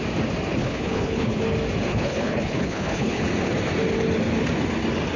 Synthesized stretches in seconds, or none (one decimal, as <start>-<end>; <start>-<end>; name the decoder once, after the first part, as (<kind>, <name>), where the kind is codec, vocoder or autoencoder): 0.6-1.4 (codec, HILCodec); 1.9-3.2